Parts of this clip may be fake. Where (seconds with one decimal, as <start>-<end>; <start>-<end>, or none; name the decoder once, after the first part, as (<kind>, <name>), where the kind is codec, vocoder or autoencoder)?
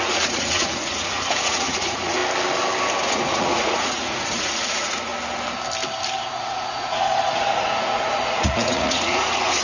0.0-2.2 (vocoder, Vocos); 3.0-5.1; 6.3-9.6